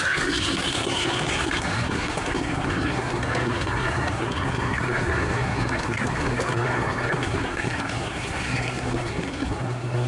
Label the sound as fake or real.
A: fake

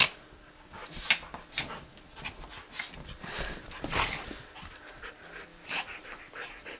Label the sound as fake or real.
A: real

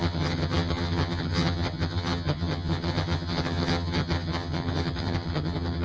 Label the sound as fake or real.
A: fake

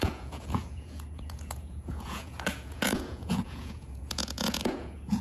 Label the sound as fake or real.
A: fake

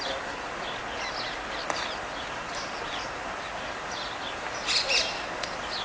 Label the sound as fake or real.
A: real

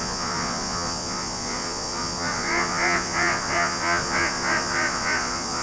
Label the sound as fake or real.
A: fake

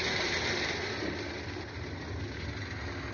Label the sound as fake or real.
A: real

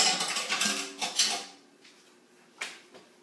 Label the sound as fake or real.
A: real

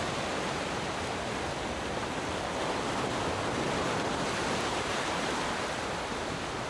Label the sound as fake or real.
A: real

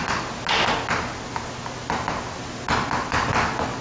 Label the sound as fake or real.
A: real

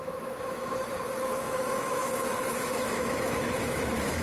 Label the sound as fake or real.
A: fake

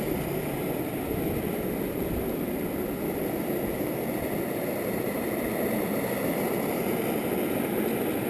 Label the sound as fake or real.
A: real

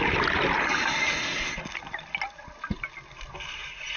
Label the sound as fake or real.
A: real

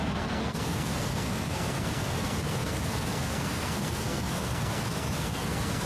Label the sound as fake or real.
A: fake